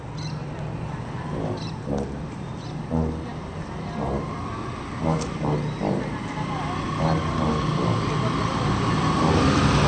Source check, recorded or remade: recorded